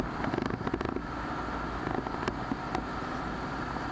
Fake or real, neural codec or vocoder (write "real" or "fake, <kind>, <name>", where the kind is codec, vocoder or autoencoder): real